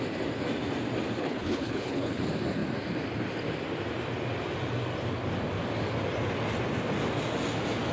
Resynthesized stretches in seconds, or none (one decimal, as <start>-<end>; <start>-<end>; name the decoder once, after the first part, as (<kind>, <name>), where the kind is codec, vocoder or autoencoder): 1.2-2.2 (codec, HILCodec)